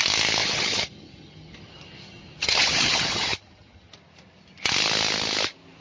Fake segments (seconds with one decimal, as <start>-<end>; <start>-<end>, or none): 0.4-3.9